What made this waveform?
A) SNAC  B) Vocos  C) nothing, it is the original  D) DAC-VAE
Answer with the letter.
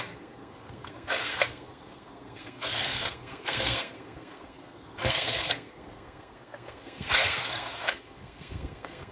A